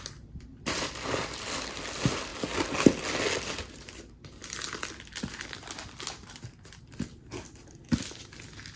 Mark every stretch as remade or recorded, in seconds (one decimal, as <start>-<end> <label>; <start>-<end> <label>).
0.0-8.8 recorded